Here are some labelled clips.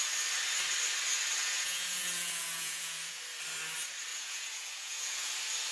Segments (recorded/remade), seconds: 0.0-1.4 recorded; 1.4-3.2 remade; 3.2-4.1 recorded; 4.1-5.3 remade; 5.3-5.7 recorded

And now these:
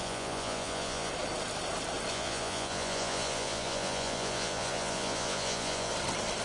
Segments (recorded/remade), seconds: 0.0-1.1 remade; 1.1-2.1 recorded; 2.1-5.9 remade; 5.9-6.4 recorded

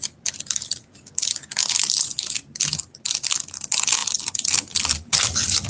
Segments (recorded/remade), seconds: 0.0-5.7 recorded